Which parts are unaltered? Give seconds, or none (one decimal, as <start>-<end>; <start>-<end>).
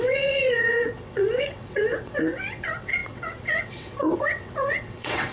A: none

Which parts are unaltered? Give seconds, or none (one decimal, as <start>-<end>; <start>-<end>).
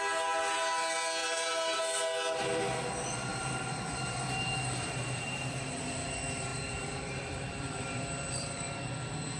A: 0.0-1.2; 1.8-3.3; 5.8-6.5; 8.6-9.4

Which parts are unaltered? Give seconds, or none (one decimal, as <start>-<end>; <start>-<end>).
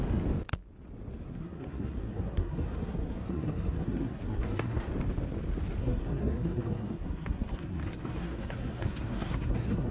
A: 0.0-1.2; 4.9-5.8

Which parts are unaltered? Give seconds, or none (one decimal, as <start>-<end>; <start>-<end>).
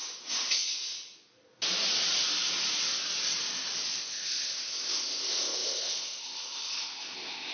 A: 0.0-3.9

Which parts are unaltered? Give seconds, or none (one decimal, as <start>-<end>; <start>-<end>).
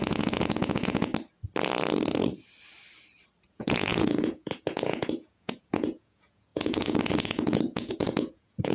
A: 1.1-3.5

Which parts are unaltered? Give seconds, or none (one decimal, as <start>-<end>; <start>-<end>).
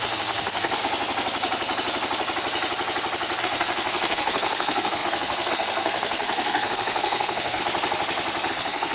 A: 0.8-3.4; 7.6-8.5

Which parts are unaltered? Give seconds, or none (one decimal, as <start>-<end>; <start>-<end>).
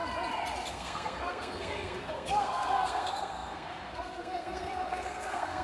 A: 0.0-0.7